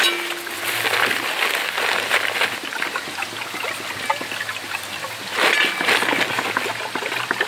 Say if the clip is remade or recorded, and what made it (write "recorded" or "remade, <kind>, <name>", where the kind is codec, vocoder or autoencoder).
recorded